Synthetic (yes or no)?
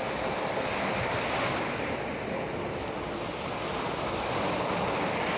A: no